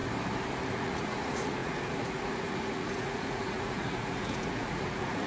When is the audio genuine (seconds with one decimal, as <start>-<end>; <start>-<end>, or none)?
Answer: 0.0-0.7